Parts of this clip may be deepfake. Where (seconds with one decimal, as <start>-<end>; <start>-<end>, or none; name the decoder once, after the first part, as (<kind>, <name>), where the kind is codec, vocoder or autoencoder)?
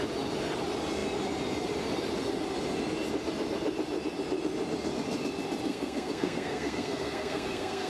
5.7-7.9 (codec, SNAC)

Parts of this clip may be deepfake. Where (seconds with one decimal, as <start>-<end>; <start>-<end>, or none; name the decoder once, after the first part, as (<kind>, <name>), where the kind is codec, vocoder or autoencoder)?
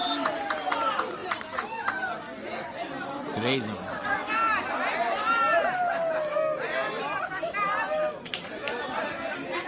none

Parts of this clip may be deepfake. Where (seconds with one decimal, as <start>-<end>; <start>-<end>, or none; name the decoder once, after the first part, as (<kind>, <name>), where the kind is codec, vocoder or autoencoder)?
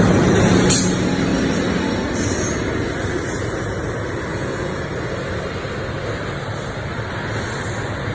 4.3-4.8 (vocoder, Vocos)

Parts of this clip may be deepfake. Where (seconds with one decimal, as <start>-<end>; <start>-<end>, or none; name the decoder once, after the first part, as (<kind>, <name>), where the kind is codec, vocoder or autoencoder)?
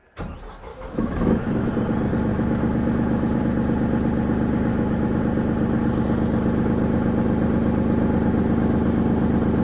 0.7-1.7 (autoencoder, DAC-VAE); 2.3-3.4; 4.7-5.2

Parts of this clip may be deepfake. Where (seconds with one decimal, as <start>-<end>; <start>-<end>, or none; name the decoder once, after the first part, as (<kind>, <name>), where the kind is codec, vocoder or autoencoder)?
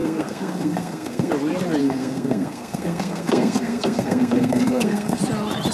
0.0-1.3 (codec, SNAC); 1.8-5.2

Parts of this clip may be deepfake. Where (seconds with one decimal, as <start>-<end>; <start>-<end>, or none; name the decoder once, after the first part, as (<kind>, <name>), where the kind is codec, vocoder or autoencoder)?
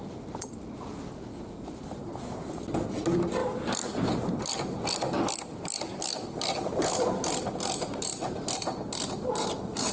none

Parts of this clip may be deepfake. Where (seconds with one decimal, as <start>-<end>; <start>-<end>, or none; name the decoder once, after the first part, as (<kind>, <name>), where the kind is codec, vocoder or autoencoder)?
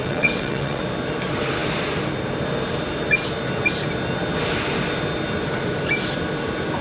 0.0-0.8 (vocoder, WaveNeXt)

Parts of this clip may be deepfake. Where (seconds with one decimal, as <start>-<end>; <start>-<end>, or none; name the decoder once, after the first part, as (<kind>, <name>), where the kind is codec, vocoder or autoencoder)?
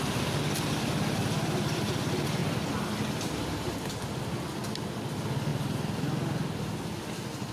none